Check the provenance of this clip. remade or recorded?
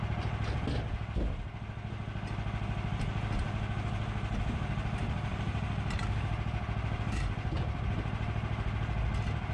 recorded